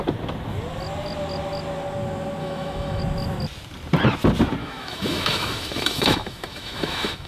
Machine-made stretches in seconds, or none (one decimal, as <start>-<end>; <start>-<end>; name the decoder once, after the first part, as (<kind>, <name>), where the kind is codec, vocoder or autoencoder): 2.4-3.0 (autoencoder, DAC-VAE); 4.6-7.3

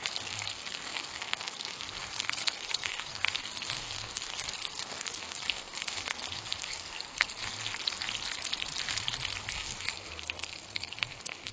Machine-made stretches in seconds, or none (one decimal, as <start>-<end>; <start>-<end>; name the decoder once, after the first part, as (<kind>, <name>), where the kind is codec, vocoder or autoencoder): 0.0-7.4 (codec, SNAC); 9.5-11.5

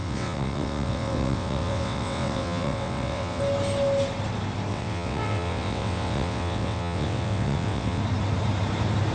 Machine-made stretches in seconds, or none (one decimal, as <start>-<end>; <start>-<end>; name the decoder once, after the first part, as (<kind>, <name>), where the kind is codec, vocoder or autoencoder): 0.0-3.4 (vocoder, WaveNeXt); 4.7-8.0

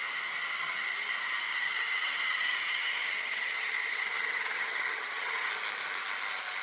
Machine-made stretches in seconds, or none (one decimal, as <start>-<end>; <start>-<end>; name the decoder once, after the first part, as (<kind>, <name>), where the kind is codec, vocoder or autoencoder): 0.5-1.1 (vocoder, HiFi-GAN); 1.5-5.5

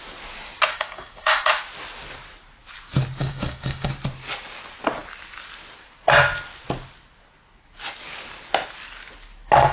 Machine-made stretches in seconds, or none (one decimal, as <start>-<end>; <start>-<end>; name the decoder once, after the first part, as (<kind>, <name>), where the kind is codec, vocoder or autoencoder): 0.7-1.5 (codec, DAC); 3.2-3.9

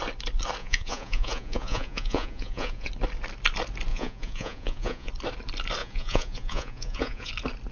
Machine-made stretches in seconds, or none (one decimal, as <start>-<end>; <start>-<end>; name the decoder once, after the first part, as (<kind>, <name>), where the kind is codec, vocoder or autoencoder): 0.6-2.9 (vocoder, Vocos); 3.9-5.1; 5.8-7.3

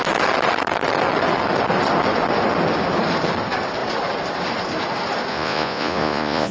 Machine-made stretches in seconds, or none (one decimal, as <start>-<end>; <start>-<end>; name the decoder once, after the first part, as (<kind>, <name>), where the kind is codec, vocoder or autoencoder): 5.3-6.5 (vocoder, Vocos)